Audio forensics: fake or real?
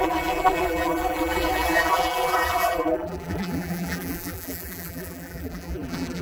fake